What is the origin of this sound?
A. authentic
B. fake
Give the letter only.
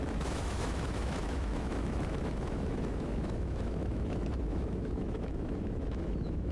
B